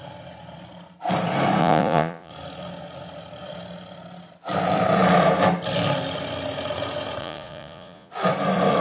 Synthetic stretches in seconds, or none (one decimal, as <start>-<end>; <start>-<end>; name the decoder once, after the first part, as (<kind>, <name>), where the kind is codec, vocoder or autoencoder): 1.6-2.3 (vocoder, Vocos); 7.2-8.1